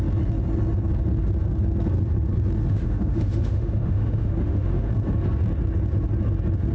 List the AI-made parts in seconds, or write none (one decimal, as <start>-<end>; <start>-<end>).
2.7-4.9